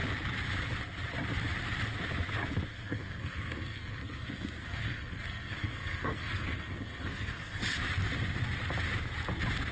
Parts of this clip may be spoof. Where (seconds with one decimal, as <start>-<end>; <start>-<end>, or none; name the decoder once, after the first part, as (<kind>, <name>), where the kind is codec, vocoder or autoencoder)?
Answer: 2.7-7.6 (codec, SNAC)

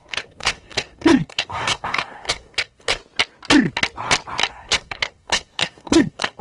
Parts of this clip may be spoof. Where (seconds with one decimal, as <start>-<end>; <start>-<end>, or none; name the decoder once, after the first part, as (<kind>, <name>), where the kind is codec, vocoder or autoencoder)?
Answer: 0.0-3.0 (codec, SNAC); 4.5-6.4

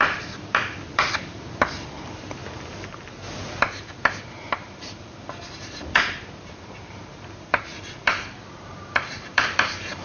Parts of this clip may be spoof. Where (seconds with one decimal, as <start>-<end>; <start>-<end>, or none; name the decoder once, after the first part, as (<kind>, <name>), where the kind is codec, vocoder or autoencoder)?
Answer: 0.0-2.4 (vocoder, BigVGAN v2); 3.1-10.0